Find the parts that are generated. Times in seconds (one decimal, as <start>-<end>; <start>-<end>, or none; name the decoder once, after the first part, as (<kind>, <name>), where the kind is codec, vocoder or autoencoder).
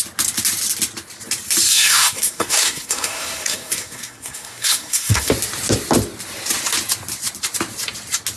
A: 1.7-5.3 (codec, SNAC)